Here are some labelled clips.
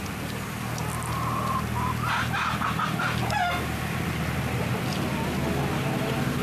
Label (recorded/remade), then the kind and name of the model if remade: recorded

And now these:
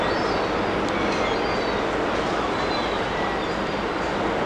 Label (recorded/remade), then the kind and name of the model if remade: recorded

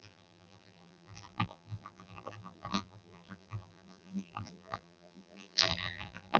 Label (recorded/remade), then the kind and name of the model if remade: remade, vocoder, BigVGAN v2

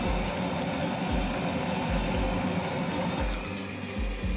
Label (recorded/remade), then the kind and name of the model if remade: recorded